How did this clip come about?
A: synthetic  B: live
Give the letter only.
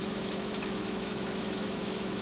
A